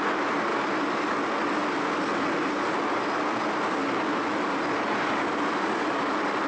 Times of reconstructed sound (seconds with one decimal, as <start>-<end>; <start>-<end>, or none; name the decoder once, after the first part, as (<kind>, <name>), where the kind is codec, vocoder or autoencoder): none